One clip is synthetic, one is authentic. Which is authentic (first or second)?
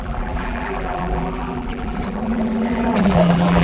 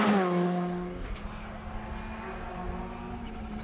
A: second